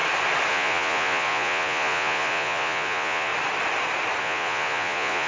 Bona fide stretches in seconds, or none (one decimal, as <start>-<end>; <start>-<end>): 0.0-0.5; 3.3-4.2